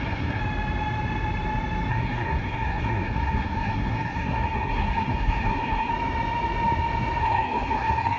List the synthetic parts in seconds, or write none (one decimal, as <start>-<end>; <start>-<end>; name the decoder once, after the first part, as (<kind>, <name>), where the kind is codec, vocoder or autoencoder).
0.0-0.4 (codec, SNAC); 1.9-5.9; 7.2-8.2

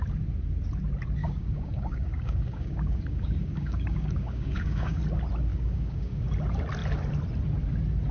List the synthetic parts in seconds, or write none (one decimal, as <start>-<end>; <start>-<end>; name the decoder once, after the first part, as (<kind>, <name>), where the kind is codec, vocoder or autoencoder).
1.2-5.0 (codec, DAC); 5.5-6.3